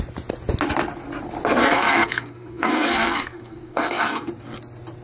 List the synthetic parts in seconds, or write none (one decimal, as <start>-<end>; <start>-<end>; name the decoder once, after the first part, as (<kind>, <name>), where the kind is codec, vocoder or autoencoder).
1.6-4.3 (codec, SNAC)